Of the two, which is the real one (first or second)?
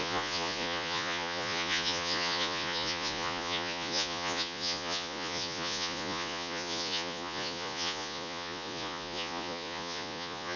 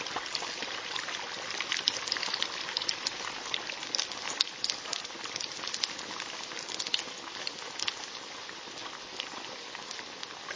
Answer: second